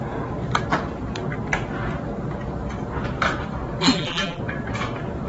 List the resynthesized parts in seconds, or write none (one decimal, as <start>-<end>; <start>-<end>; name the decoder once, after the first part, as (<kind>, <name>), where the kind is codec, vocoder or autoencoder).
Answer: 3.8-4.4 (vocoder, BigVGAN v2)